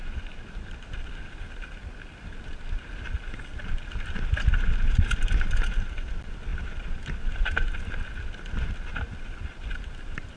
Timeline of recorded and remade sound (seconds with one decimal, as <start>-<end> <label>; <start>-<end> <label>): 0.0-10.4 recorded